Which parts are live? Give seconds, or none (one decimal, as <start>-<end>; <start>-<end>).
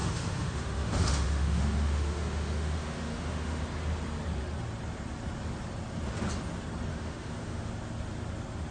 3.6-6.9; 7.7-8.7